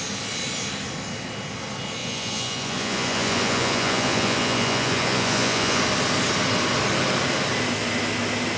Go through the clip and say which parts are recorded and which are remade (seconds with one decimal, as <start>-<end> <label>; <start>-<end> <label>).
0.0-2.0 recorded; 2.0-5.8 remade; 5.8-8.6 recorded